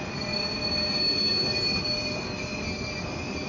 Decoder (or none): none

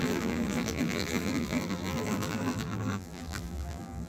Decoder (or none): vocoder, BigVGAN v2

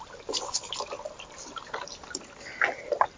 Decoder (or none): none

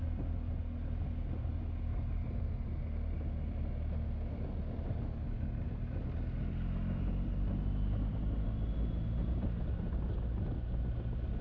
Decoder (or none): none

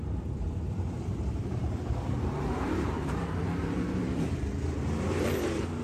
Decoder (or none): vocoder, BigVGAN v2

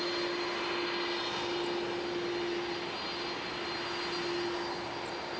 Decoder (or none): none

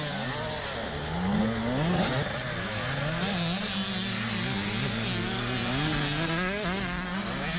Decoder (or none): none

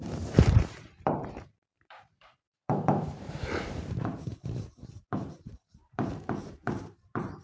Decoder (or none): vocoder, BigVGAN v2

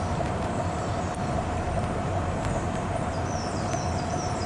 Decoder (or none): vocoder, BigVGAN v2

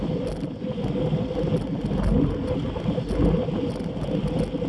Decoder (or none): none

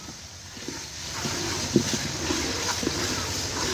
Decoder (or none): vocoder, BigVGAN v2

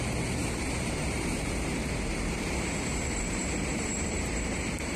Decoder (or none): vocoder, BigVGAN v2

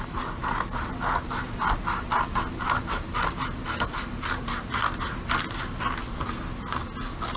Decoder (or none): none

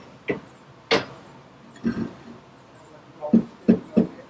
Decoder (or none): none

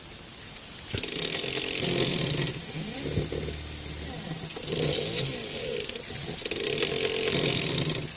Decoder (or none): none